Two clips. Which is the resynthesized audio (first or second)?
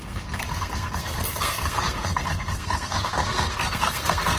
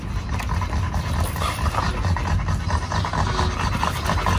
first